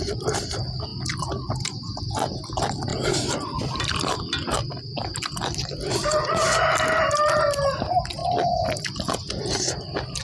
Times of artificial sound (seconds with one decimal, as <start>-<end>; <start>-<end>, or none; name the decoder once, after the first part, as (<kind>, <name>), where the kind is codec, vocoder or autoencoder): none